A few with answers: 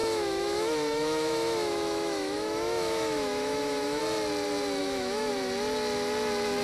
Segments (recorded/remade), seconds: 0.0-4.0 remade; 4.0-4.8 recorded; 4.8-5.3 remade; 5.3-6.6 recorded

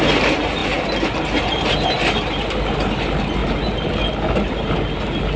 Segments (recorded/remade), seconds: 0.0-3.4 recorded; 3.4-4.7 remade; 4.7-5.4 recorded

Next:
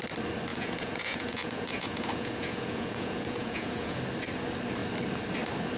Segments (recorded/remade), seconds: 0.0-0.5 recorded; 0.5-4.0 remade; 4.0-5.8 recorded

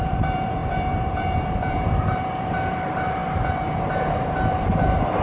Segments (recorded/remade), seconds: 0.0-3.2 remade; 3.2-4.5 recorded; 4.5-5.2 remade

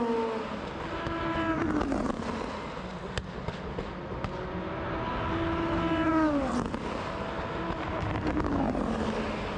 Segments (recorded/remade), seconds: 0.0-9.6 recorded

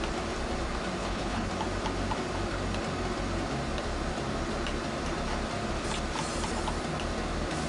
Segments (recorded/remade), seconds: 0.0-1.0 recorded; 1.0-1.5 remade; 1.5-7.7 recorded